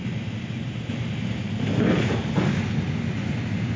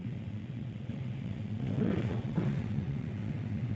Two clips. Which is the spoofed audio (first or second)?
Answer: second